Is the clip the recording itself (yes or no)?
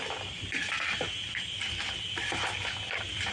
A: yes